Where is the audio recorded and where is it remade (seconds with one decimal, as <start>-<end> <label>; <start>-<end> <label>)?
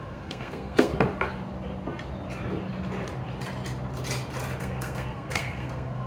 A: 0.0-0.9 remade; 0.9-4.6 recorded; 4.6-6.1 remade